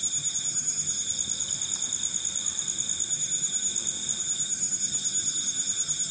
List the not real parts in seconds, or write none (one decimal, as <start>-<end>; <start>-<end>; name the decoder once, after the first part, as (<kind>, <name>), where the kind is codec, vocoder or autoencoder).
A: 0.0-1.1 (vocoder, HiFi-GAN); 3.1-3.7; 4.2-6.1